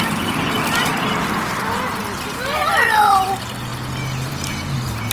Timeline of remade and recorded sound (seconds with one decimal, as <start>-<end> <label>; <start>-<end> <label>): 0.0-0.9 recorded; 0.9-1.6 remade; 1.6-5.1 recorded